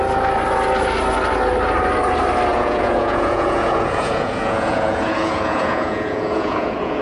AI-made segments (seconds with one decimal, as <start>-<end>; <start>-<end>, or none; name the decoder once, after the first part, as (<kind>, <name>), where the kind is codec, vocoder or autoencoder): 2.5-7.0 (vocoder, Vocos)